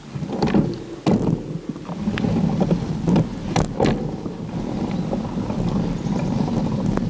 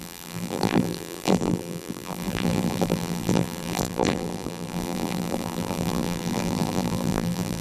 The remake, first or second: second